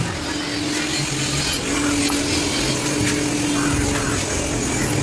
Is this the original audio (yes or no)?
yes